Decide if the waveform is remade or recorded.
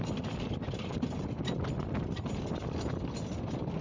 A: recorded